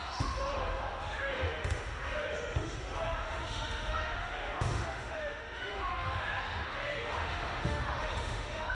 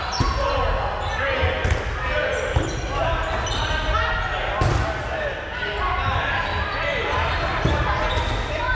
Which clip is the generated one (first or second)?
first